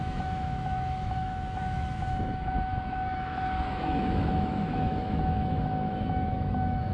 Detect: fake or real fake